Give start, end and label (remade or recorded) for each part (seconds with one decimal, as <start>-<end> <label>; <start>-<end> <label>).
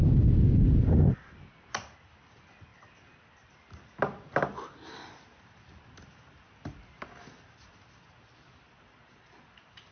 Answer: 0.0-9.9 recorded